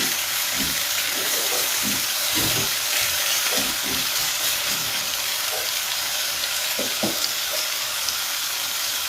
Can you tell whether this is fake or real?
fake